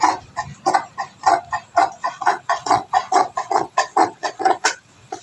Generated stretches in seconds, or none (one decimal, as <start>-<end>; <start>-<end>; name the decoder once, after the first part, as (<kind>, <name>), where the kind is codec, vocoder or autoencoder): 2.0-5.2 (vocoder, WaveNeXt)